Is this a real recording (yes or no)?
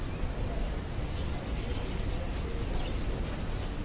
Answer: yes